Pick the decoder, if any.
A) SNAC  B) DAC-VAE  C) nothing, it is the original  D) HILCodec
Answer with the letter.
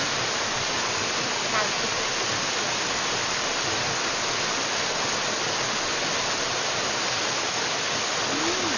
C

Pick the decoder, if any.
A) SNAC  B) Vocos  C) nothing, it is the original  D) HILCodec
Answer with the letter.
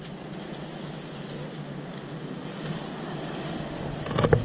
C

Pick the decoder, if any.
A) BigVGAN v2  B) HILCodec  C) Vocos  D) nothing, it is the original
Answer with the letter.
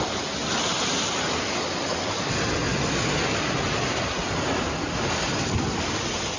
D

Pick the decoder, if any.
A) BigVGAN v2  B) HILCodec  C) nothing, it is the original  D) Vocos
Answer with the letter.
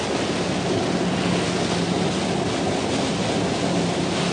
C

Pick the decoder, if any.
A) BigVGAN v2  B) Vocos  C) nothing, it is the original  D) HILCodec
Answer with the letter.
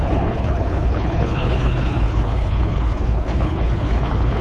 D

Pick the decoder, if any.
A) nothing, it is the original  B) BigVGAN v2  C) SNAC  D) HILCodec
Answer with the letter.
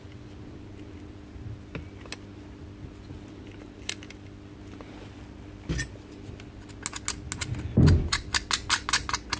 A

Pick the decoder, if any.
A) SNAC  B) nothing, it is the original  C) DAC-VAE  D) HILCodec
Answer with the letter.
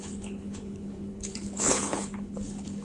D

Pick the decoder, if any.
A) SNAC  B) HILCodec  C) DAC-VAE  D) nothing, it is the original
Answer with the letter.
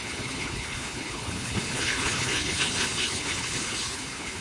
B